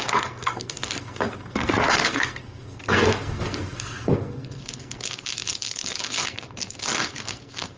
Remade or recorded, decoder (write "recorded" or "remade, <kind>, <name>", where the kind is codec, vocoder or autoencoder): remade, codec, SNAC